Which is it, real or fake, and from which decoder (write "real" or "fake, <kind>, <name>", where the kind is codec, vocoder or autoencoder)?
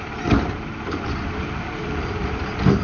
fake, vocoder, BigVGAN v2